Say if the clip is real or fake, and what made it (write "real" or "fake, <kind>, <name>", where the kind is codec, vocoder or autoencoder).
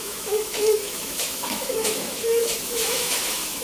fake, autoencoder, DAC-VAE